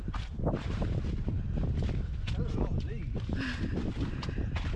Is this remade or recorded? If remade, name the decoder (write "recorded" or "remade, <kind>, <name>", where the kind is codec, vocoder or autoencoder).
recorded